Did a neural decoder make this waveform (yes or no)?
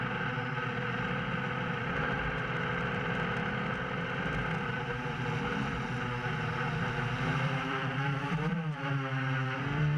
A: yes